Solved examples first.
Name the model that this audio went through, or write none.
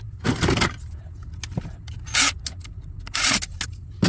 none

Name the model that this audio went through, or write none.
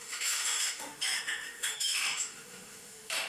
autoencoder, DAC-VAE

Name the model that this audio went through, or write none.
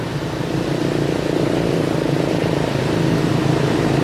none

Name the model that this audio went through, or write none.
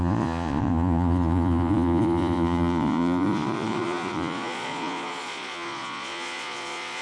vocoder, Vocos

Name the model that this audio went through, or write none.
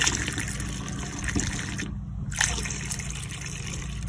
none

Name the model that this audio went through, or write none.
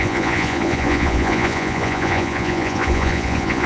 vocoder, Vocos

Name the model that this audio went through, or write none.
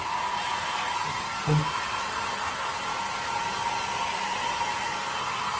none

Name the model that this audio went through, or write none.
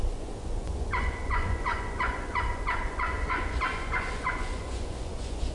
vocoder, Vocos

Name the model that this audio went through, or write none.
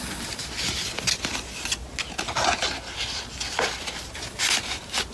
none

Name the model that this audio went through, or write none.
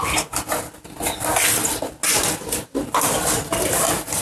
none